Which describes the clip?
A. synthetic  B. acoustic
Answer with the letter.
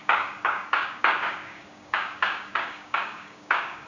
A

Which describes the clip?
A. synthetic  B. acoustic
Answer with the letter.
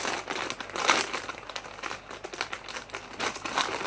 B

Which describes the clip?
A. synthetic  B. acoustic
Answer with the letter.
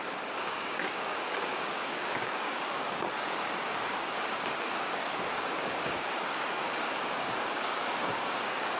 A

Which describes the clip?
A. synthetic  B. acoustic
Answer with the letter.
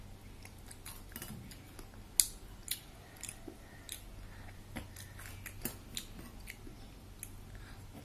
B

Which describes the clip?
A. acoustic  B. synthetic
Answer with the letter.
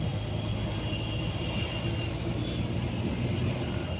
A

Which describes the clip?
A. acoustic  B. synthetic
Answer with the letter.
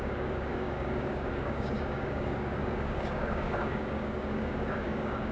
B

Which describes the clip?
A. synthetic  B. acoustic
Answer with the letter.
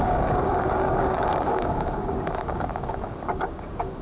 A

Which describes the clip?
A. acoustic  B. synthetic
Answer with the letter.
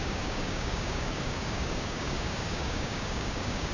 B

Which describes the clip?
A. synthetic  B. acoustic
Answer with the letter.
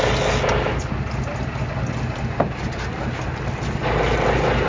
B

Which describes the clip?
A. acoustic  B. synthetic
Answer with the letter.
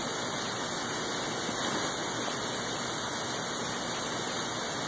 A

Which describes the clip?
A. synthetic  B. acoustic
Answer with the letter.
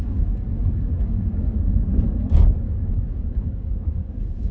A